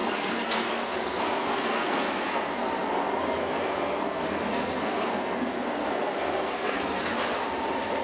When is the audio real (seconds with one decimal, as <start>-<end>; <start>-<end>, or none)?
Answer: 7.1-8.0